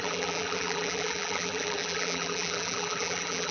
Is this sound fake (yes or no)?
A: yes